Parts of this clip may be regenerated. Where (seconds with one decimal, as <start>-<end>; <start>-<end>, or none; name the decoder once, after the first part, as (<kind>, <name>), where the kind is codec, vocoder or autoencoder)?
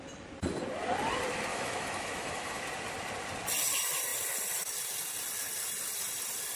1.5-2.6 (autoencoder, DAC-VAE)